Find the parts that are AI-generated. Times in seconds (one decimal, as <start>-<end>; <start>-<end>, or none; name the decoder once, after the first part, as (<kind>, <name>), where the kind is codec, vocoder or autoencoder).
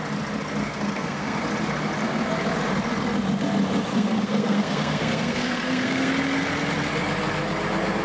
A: 0.6-1.4 (codec, SNAC); 3.9-6.1